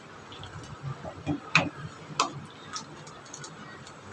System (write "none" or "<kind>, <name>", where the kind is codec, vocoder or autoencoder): none